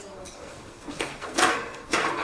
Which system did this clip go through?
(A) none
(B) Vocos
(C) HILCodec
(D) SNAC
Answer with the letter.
D